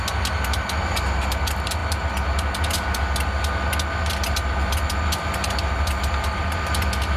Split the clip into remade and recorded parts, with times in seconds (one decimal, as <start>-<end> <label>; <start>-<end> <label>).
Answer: 0.0-7.2 recorded